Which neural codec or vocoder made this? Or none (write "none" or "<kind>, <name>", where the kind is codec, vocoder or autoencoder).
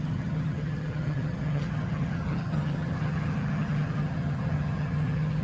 vocoder, HiFi-GAN